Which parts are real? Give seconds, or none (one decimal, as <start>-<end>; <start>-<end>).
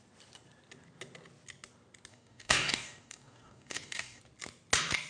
0.0-2.1; 4.2-5.1